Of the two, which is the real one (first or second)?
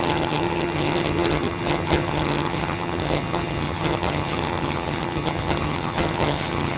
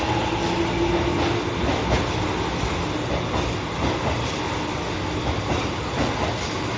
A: second